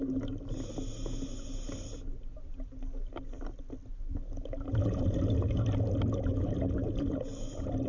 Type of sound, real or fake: real